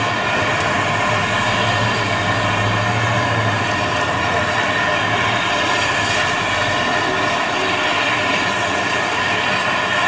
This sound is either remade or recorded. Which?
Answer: recorded